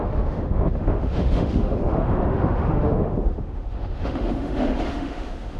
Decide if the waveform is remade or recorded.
remade